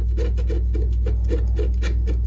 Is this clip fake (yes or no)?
no